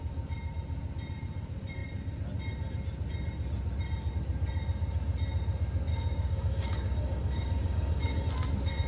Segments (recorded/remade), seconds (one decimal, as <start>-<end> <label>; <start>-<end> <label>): 0.0-5.9 recorded; 5.9-8.2 remade; 8.2-8.9 recorded